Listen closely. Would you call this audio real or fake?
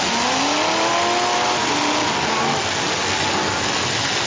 real